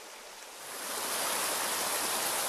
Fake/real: real